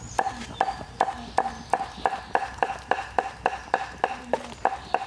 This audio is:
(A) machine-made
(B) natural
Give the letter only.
B